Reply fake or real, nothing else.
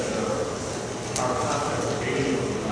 real